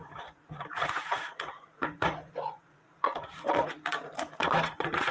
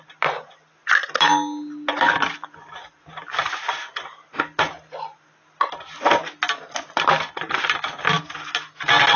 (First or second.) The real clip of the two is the second